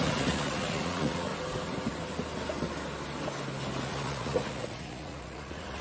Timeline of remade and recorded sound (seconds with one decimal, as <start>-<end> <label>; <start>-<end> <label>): 0.0-1.3 remade; 1.3-3.8 recorded; 3.8-5.8 remade